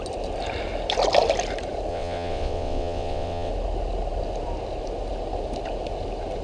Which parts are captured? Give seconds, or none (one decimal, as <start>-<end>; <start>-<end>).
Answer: 0.0-1.9; 3.5-6.4